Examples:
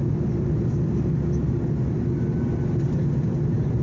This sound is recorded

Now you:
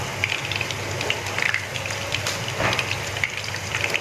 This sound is recorded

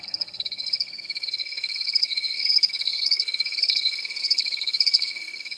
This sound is remade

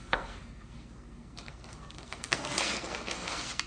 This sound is remade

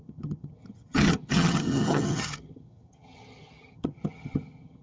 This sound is remade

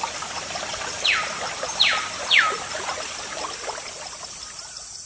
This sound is recorded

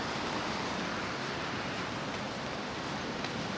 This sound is recorded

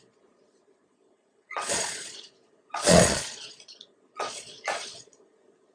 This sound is remade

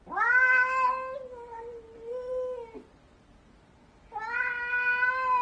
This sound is recorded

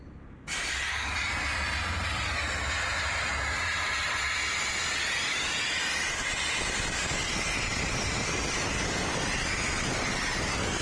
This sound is recorded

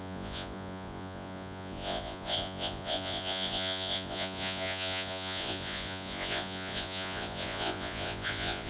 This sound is remade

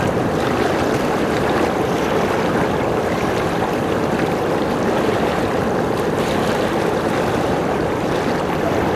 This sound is remade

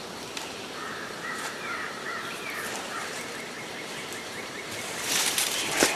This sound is remade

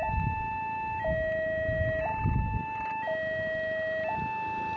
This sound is recorded